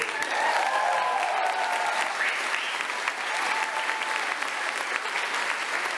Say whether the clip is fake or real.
real